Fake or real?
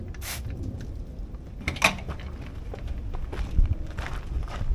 real